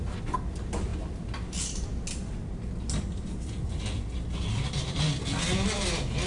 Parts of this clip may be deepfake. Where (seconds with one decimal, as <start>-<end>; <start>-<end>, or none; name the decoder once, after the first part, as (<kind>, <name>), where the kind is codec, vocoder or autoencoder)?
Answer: none